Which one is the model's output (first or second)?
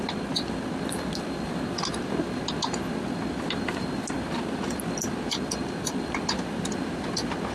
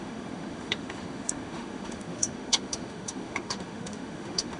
second